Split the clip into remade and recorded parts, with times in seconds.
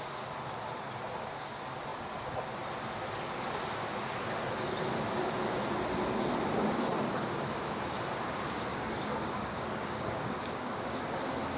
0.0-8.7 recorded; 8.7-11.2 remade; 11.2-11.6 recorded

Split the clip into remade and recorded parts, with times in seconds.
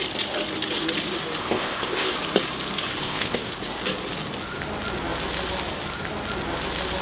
0.0-1.4 recorded; 1.4-2.1 remade; 2.1-3.0 recorded; 3.0-3.5 remade; 3.5-7.0 recorded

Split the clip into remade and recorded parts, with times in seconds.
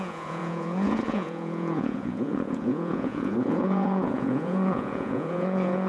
0.0-5.9 remade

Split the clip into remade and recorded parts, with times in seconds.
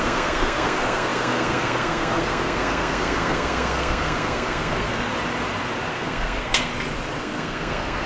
0.0-5.1 remade; 5.1-5.9 recorded; 5.9-6.7 remade; 6.7-7.2 recorded; 7.2-8.1 remade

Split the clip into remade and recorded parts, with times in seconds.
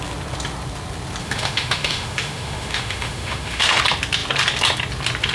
0.0-1.2 recorded; 1.2-3.8 remade; 3.8-5.3 recorded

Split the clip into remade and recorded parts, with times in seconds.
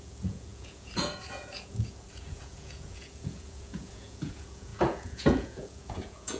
0.0-6.4 remade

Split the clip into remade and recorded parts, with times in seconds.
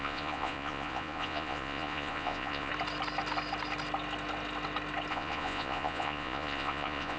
0.0-2.7 remade; 2.7-5.1 recorded; 5.1-7.2 remade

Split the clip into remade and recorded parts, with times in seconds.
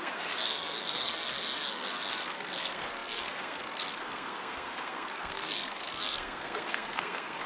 0.0-7.5 remade